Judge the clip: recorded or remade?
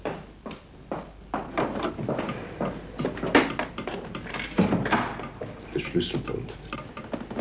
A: recorded